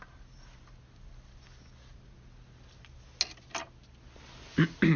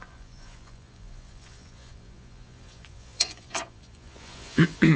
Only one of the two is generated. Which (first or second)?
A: second